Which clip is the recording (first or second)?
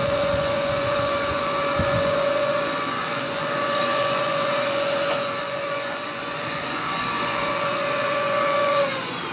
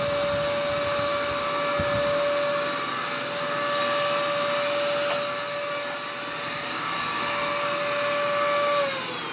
second